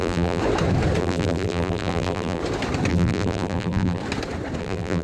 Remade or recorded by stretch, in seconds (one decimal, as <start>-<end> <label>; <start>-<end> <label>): 0.0-0.4 remade; 0.4-1.0 recorded; 1.0-2.4 remade; 2.4-2.9 recorded; 2.9-4.0 remade; 4.0-4.6 recorded; 4.6-5.0 remade